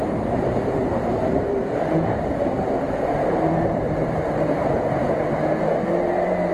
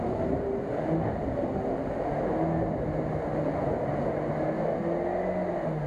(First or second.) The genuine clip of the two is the second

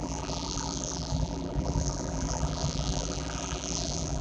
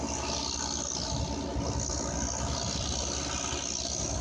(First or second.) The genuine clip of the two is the second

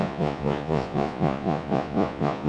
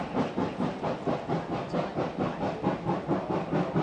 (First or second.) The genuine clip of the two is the second